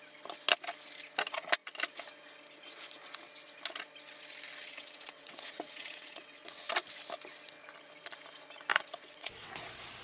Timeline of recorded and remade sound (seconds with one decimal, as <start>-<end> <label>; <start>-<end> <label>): 0.0-4.6 recorded; 4.6-6.7 remade; 6.7-8.7 recorded; 8.7-9.5 remade; 9.5-10.0 recorded